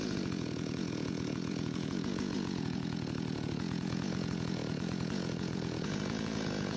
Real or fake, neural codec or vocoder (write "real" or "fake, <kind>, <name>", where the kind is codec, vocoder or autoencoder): fake, vocoder, Vocos